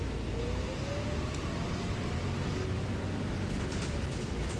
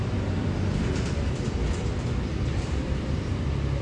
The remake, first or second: second